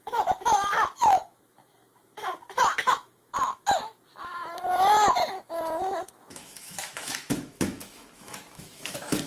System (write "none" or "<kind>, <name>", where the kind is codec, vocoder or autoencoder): autoencoder, DAC-VAE